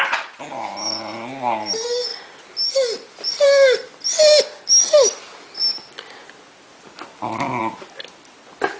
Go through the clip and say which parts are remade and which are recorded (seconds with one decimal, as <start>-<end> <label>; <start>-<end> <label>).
0.0-8.8 recorded